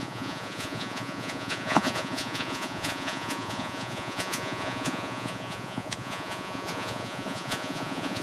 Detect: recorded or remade remade